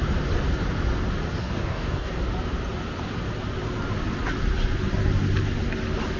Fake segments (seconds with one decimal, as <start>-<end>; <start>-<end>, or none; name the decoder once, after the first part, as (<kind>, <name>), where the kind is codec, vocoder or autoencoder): 1.4-2.1 (codec, DAC)